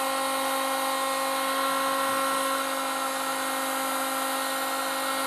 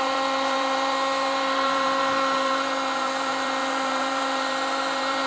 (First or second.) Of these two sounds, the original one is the first